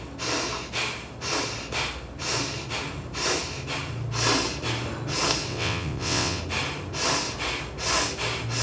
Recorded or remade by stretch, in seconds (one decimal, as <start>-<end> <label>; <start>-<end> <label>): 0.0-5.5 recorded; 5.5-6.4 remade; 6.4-8.6 recorded